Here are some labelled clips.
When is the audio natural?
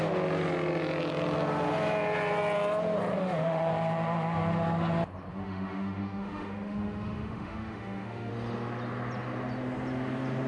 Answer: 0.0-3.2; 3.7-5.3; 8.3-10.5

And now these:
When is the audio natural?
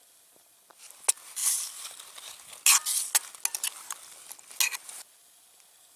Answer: 0.0-6.0